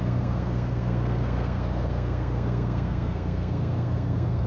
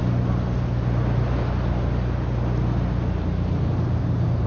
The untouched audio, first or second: second